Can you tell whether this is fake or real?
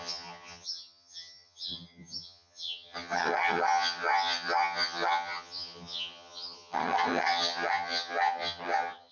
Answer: fake